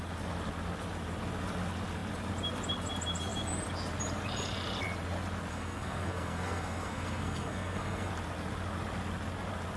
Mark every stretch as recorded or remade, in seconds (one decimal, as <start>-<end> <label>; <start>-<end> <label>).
0.0-5.5 recorded; 5.5-8.1 remade; 8.1-9.8 recorded